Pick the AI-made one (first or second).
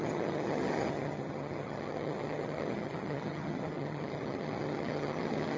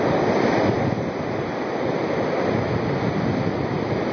first